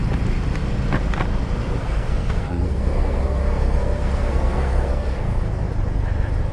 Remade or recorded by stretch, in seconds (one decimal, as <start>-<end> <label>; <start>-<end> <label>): 0.0-1.8 recorded; 1.8-5.7 remade; 5.7-6.5 recorded